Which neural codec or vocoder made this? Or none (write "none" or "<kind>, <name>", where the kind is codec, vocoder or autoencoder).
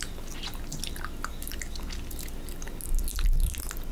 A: none